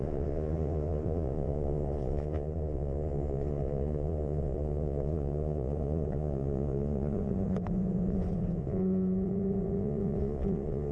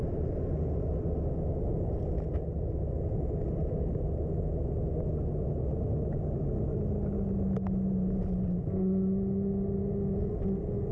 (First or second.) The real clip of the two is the second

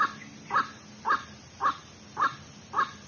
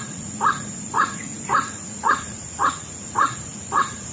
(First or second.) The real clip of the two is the first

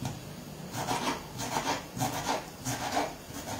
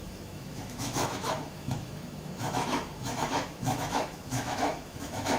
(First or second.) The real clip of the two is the first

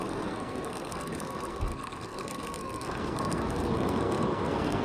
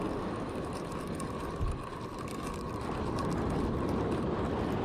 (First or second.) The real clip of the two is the second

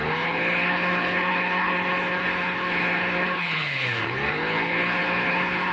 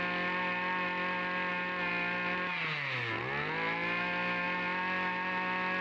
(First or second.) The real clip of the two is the second